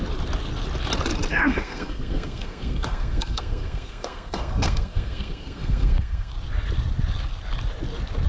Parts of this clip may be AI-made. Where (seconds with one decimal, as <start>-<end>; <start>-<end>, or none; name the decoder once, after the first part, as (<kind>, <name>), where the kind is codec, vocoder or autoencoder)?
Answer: 1.3-6.3 (codec, SNAC)